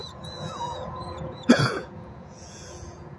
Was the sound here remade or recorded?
remade